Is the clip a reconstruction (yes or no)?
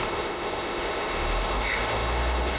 yes